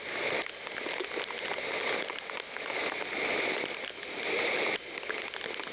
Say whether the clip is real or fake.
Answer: real